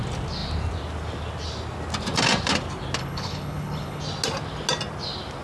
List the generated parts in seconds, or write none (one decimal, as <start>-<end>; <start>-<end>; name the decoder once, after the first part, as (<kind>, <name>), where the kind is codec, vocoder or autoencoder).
3.0-4.0 (codec, HILCodec)